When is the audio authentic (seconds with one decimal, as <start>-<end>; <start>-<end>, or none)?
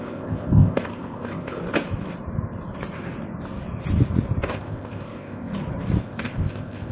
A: 1.6-4.5; 5.5-6.0